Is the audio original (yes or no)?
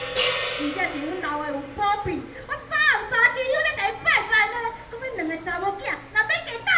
yes